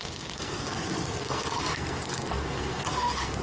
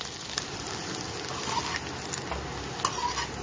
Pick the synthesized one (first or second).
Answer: first